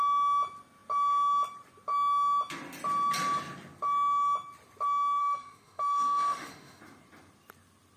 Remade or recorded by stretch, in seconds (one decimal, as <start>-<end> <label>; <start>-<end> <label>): 0.0-5.2 recorded; 5.2-6.8 remade; 6.8-8.0 recorded